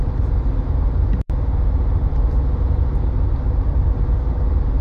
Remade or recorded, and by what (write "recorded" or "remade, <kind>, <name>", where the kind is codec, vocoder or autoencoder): remade, vocoder, BigVGAN v2